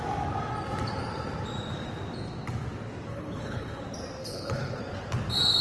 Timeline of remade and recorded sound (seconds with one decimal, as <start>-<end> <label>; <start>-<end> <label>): 0.0-3.1 recorded; 3.1-3.8 remade; 3.8-4.2 recorded; 4.2-4.8 remade; 4.8-5.6 recorded